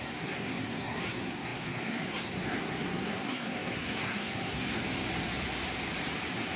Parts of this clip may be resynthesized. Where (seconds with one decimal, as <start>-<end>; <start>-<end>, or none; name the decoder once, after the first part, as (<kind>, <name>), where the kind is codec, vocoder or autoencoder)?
0.0-4.8 (codec, SNAC)